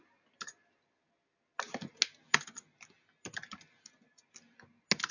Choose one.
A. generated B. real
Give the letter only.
B